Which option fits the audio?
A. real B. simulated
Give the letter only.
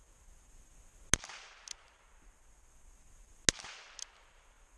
A